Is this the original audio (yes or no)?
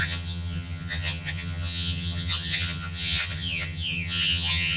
no